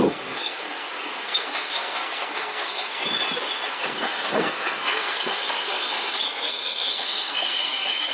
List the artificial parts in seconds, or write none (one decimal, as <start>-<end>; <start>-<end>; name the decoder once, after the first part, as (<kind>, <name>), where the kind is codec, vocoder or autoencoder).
0.0-3.0 (codec, SNAC); 3.7-8.1